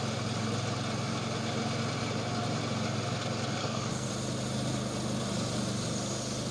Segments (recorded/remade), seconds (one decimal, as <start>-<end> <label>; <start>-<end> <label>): 0.0-3.6 recorded; 3.6-4.1 remade; 4.1-6.5 recorded